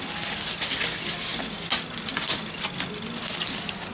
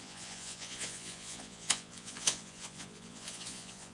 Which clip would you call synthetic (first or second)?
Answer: second